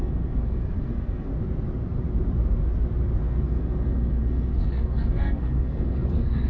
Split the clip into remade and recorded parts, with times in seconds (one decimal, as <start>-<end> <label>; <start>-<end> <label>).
0.0-1.3 remade; 1.3-3.2 recorded; 3.2-6.5 remade